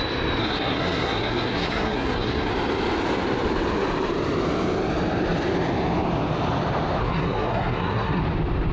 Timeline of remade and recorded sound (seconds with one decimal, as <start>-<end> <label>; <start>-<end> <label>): 0.0-0.4 recorded; 0.4-2.5 remade; 2.5-7.0 recorded; 7.0-8.2 remade; 8.2-8.7 recorded